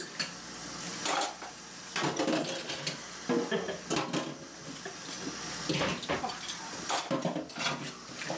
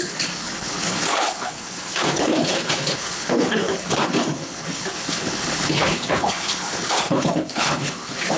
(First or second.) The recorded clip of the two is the first